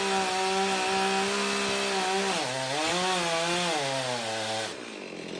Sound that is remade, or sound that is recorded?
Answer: recorded